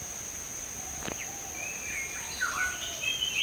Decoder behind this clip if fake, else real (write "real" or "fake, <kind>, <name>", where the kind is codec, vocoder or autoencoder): real